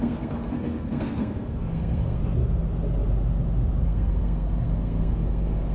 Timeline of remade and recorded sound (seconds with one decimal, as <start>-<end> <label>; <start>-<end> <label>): 0.0-2.2 remade; 2.2-3.8 recorded; 3.8-5.7 remade